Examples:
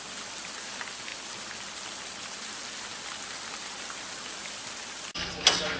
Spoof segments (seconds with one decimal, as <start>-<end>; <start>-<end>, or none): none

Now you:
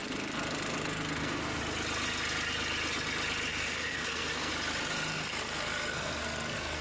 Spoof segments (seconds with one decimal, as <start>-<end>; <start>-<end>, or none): 0.0-1.6; 3.5-4.5; 5.1-6.8

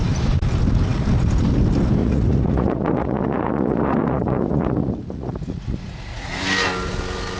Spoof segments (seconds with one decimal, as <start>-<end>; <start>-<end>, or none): 2.0-6.4